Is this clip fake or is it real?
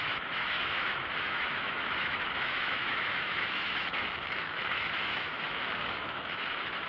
fake